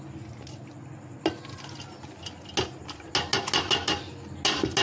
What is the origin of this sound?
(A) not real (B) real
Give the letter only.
B